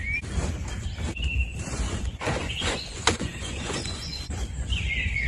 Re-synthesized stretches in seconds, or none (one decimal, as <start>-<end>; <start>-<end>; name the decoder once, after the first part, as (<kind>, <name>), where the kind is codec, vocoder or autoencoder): 1.7-5.3 (vocoder, Vocos)